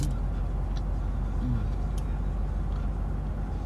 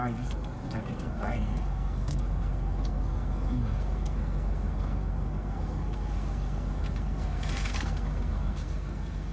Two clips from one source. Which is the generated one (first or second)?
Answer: second